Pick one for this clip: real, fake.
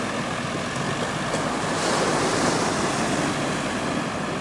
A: real